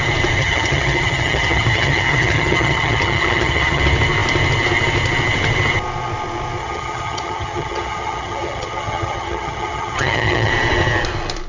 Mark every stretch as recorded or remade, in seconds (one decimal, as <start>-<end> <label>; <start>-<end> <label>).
0.0-0.4 recorded; 0.4-3.8 remade; 3.8-6.6 recorded; 6.6-10.5 remade; 10.5-11.5 recorded